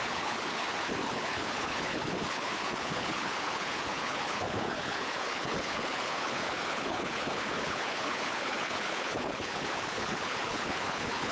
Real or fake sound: fake